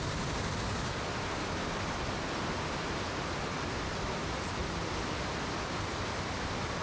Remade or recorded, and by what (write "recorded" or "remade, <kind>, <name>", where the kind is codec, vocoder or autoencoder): recorded